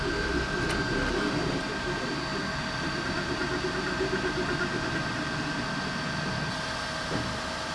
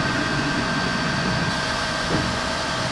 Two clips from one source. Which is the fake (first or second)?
second